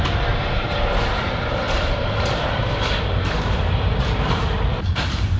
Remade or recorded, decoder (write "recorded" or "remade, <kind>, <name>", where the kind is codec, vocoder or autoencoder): remade, vocoder, BigVGAN v2